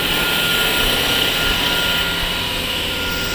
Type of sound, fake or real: real